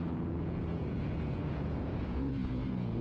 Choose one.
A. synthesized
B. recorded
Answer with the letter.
A